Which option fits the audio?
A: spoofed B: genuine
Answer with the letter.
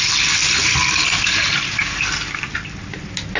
B